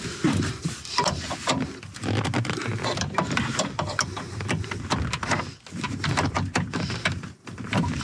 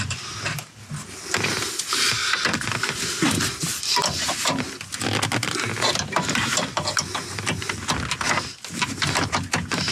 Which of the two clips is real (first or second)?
second